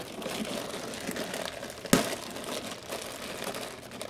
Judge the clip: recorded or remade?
recorded